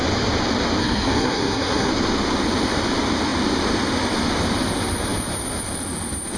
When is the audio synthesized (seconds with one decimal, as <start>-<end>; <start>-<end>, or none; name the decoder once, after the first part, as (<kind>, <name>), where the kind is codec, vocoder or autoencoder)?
0.8-1.9 (codec, SNAC)